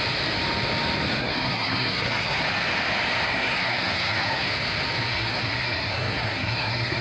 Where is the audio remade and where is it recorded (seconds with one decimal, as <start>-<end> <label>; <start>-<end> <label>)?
0.0-1.2 recorded; 1.2-2.4 remade; 2.4-3.3 recorded; 3.3-4.5 remade; 4.5-5.1 recorded; 5.1-7.0 remade